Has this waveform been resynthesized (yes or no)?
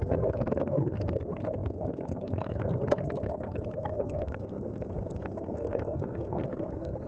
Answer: yes